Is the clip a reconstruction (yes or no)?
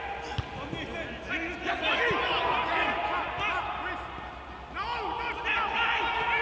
no